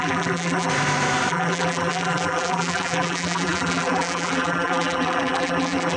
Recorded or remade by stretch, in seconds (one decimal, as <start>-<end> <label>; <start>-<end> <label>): 0.0-0.7 remade; 0.7-1.3 recorded; 1.3-6.0 remade